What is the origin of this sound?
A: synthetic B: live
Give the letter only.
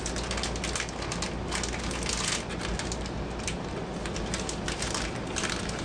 B